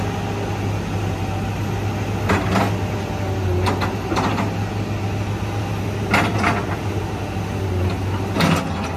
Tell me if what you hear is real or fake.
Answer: real